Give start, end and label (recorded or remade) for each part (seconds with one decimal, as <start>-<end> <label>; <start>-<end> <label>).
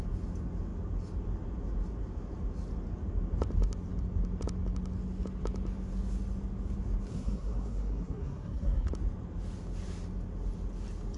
0.0-7.1 recorded; 7.1-8.9 remade; 8.9-11.2 recorded